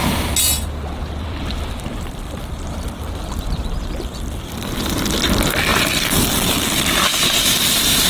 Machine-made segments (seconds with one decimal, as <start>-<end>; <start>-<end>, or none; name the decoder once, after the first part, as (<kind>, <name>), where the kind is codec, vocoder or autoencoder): 0.0-4.9 (vocoder, BigVGAN v2); 5.7-6.3